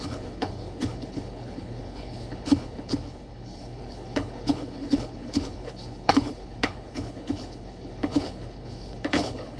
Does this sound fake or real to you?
fake